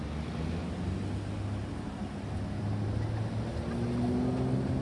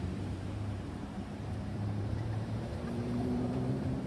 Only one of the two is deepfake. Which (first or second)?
second